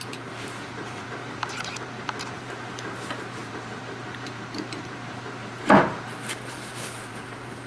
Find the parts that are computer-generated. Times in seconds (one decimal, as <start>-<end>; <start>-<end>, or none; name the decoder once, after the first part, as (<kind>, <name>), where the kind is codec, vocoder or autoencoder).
0.0-7.7 (vocoder, BigVGAN v2)